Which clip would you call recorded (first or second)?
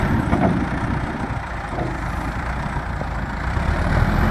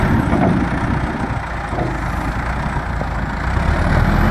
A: second